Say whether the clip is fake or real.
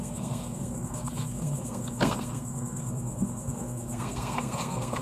fake